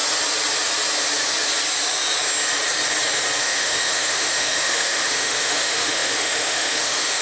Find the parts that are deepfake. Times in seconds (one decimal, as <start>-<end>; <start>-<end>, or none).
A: 3.4-7.2